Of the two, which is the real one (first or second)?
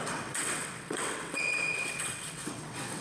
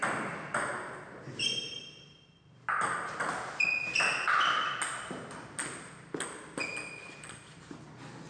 second